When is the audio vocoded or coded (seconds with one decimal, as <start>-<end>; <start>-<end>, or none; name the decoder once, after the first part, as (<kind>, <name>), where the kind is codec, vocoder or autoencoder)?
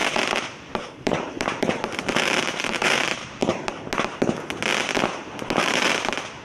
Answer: 0.7-3.4 (vocoder, BigVGAN v2); 5.7-6.4